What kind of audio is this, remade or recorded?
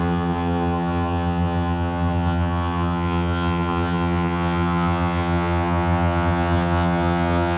remade